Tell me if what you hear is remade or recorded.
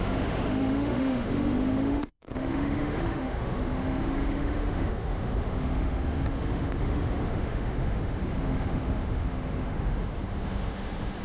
remade